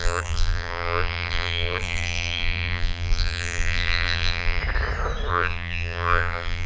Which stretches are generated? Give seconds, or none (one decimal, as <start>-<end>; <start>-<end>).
0.0-4.6; 5.3-6.7